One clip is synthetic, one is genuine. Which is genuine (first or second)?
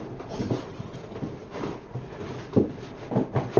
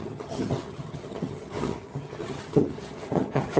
first